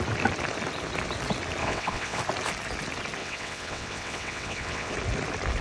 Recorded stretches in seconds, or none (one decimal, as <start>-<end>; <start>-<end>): 0.0-1.6; 2.2-3.2; 4.9-5.6